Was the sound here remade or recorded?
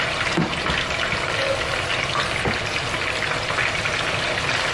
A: recorded